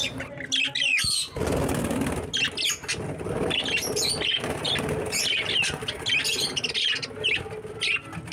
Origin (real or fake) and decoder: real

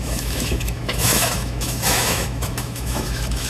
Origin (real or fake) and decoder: fake, autoencoder, DAC-VAE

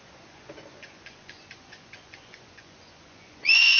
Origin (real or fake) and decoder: fake, vocoder, Vocos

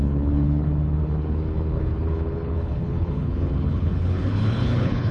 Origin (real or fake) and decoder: fake, codec, HILCodec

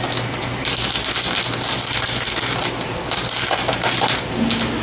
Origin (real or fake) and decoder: real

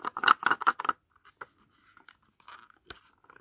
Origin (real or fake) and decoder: real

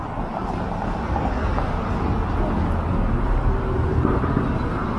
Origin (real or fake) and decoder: real